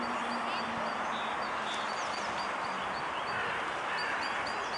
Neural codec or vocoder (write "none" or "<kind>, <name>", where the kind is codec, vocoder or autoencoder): none